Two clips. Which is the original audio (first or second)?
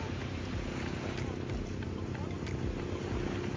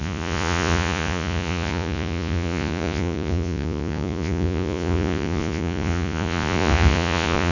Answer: first